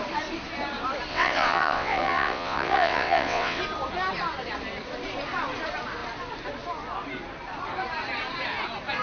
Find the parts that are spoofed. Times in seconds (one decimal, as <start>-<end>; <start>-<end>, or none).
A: 1.1-3.6